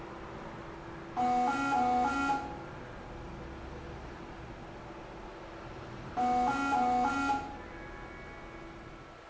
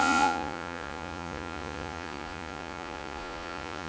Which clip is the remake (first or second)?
second